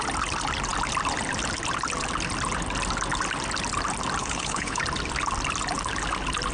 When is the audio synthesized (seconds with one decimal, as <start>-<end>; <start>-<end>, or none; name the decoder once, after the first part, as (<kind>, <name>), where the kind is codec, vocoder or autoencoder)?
4.2-4.8 (codec, HILCodec)